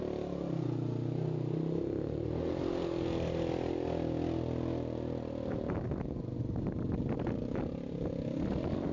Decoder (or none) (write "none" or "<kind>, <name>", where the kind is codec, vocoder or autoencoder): none